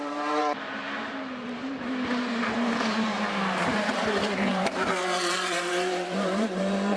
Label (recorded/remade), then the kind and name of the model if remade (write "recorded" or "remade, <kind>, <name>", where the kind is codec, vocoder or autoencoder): remade, vocoder, BigVGAN v2